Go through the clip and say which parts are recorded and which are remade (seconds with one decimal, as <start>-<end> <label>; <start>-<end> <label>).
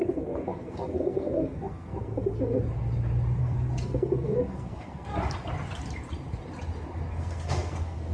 0.0-2.6 remade; 2.6-3.4 recorded; 3.4-5.1 remade; 5.1-7.1 recorded; 7.1-8.1 remade